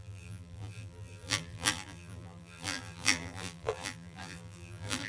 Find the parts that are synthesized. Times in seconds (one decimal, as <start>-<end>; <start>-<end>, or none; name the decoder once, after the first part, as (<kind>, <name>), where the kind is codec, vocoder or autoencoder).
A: 0.0-5.1 (vocoder, BigVGAN v2)